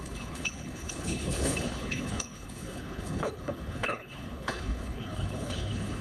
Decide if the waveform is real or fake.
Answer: fake